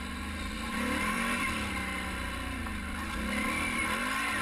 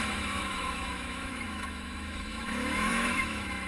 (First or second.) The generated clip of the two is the second